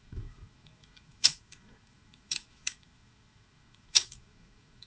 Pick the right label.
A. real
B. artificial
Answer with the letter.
B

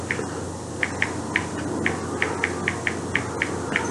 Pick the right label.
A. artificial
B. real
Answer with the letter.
B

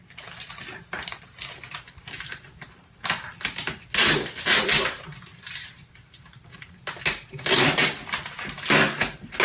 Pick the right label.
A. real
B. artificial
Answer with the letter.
A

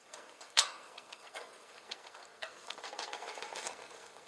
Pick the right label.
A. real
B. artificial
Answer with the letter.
B